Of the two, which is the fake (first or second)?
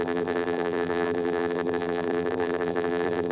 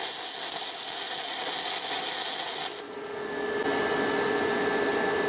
first